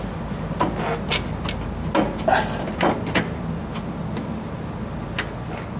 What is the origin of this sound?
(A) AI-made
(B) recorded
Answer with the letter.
B